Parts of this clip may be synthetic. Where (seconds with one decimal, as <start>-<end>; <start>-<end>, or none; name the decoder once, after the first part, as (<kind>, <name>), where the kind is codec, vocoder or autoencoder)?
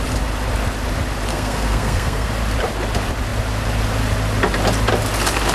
1.3-2.3 (codec, SNAC)